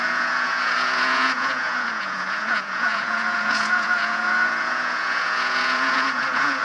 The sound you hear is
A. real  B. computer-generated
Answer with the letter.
B